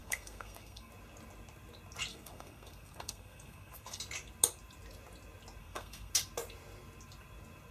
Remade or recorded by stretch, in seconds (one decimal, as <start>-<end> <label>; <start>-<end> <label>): 0.0-0.9 remade; 0.9-2.1 recorded; 2.1-4.0 remade; 4.0-5.6 recorded; 5.6-6.1 remade; 6.1-7.7 recorded